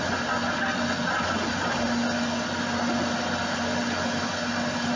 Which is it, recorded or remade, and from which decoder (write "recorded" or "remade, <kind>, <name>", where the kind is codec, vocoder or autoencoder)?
recorded